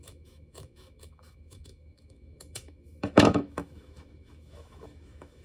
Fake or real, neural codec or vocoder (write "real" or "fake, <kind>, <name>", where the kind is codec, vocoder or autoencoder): fake, autoencoder, DAC-VAE